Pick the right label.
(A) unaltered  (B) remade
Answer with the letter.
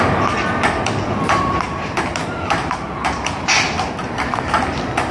A